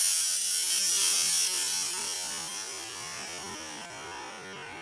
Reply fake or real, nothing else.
real